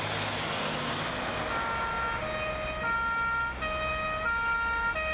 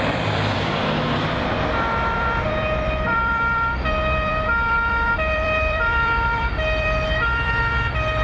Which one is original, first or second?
first